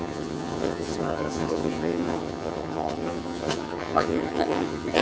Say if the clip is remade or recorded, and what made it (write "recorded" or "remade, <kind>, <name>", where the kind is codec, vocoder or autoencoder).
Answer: remade, vocoder, HiFi-GAN